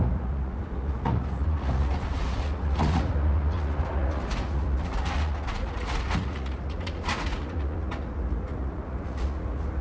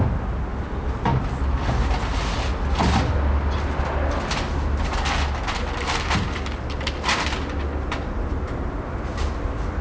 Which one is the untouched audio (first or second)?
second